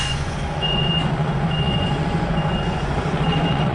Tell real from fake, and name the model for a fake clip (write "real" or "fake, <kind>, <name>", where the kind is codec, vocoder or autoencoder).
fake, vocoder, Vocos